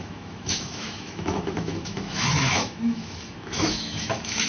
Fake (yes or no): yes